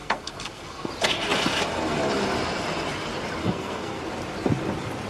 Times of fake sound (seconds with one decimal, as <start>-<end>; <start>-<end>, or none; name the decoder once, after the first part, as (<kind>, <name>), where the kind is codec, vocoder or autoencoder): 0.0-0.9 (codec, SNAC); 3.4-4.0

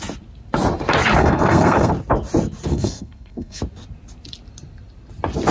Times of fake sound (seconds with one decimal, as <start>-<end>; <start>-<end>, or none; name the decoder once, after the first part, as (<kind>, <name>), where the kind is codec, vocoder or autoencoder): 1.2-1.9 (codec, SNAC); 2.7-3.6